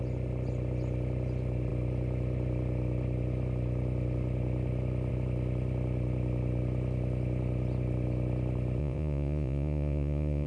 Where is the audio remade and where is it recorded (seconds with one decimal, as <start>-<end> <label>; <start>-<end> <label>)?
0.0-8.8 recorded; 8.8-10.5 remade